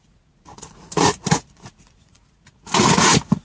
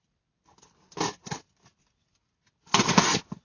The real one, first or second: second